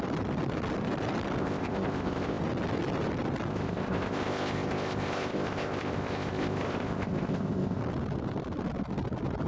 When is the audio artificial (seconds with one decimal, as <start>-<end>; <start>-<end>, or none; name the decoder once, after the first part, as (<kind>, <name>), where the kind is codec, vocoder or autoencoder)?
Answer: 1.4-2.4 (codec, ZipCodec); 3.5-7.8